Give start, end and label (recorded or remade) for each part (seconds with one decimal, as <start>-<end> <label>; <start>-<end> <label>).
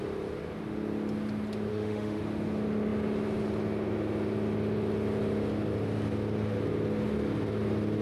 0.0-1.7 recorded; 1.7-2.2 remade; 2.2-8.0 recorded